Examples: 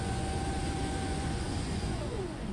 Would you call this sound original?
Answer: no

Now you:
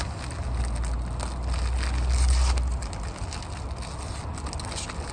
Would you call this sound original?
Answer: yes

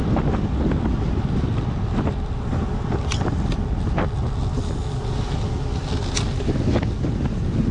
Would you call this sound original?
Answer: yes